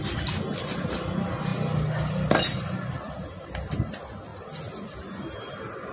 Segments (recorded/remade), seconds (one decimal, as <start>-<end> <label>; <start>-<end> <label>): 0.0-5.9 recorded